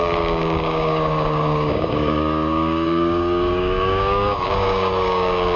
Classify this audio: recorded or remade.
remade